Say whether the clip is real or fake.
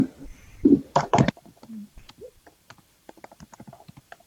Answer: fake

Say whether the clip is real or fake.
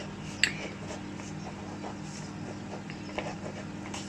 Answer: real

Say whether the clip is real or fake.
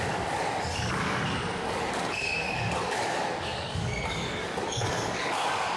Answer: fake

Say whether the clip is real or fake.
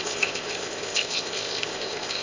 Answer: fake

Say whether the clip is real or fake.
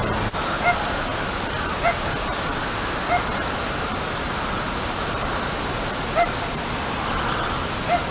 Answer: real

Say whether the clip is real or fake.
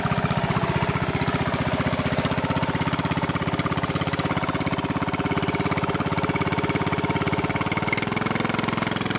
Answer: real